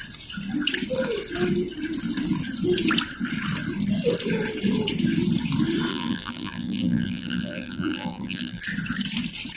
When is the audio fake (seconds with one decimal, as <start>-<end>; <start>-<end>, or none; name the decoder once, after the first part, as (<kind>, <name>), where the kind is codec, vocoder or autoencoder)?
5.9-8.6 (vocoder, BigVGAN v2)